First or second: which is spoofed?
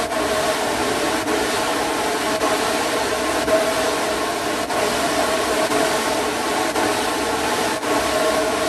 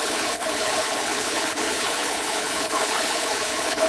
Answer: second